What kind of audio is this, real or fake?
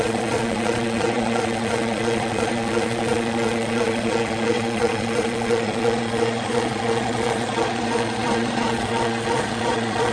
fake